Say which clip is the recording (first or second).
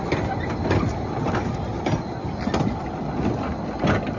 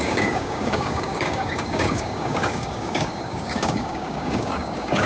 first